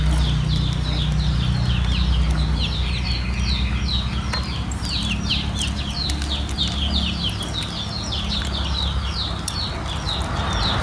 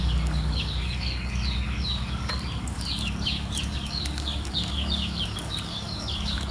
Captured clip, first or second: first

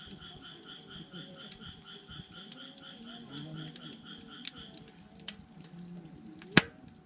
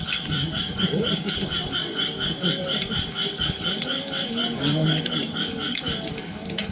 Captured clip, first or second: first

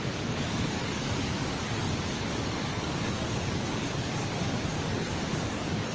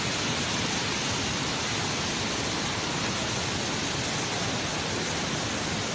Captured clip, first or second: second